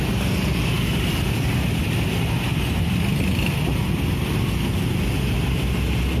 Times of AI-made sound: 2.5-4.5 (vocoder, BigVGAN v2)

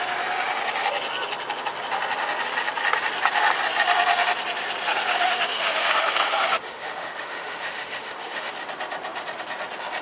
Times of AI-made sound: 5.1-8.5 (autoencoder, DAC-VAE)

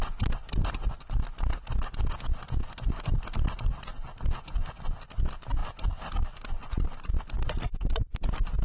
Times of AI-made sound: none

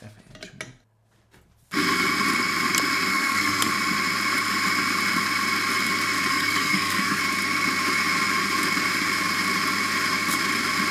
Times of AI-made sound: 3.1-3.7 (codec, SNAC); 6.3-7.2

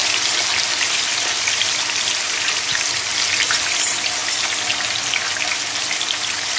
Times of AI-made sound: none

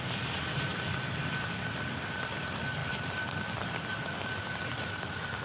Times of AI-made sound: 0.7-1.4 (vocoder, BigVGAN v2); 2.8-5.4

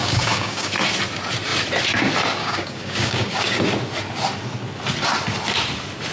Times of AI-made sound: 0.0-0.7 (codec, DAC); 2.4-3.6